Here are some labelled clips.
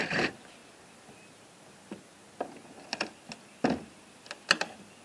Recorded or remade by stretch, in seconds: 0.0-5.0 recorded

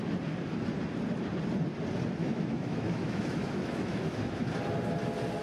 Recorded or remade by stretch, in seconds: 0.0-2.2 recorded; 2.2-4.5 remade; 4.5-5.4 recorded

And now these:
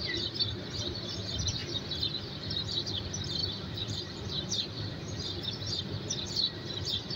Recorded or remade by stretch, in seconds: 0.0-3.4 recorded; 3.4-5.8 remade; 5.8-7.2 recorded

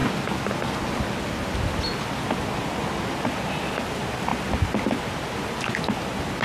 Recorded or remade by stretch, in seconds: 0.0-4.3 recorded; 4.3-5.8 remade; 5.8-6.4 recorded

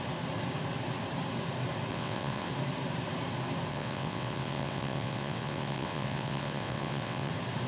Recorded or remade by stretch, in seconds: 0.0-1.9 recorded; 1.9-2.5 remade; 2.5-3.7 recorded; 3.7-7.3 remade; 7.3-7.7 recorded

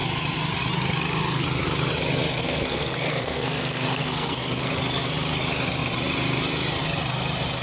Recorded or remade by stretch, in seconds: 0.0-2.3 recorded; 2.3-4.7 remade; 4.7-7.6 recorded